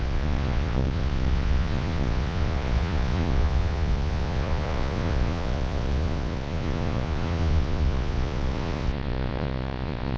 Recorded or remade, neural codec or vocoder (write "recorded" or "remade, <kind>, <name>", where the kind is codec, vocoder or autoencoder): remade, vocoder, Vocos